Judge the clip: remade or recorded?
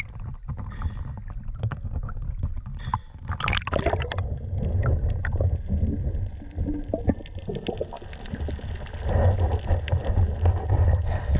recorded